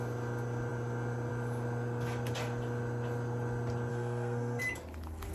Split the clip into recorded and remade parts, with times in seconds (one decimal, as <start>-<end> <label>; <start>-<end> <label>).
0.0-3.9 recorded; 3.9-4.6 remade; 4.6-5.3 recorded